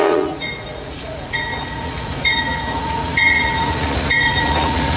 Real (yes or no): no